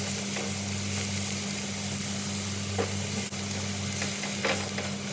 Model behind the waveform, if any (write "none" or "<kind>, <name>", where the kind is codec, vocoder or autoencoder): none